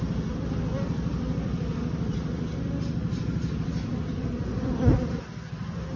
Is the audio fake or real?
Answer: fake